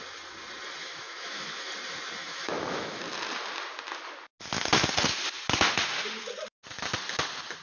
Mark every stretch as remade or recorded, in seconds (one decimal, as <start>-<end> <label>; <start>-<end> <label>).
0.0-0.8 recorded; 0.8-1.7 remade; 1.7-2.2 recorded; 2.2-3.0 remade; 3.0-7.6 recorded